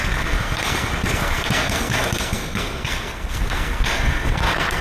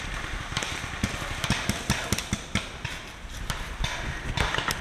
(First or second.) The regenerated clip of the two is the first